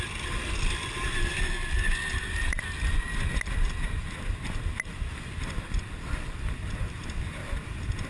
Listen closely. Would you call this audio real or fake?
real